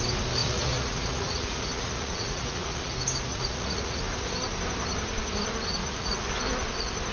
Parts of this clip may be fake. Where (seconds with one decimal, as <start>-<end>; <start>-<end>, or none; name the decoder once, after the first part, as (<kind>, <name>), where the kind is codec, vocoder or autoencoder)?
0.4-2.9 (vocoder, Vocos); 3.3-4.0; 5.8-6.3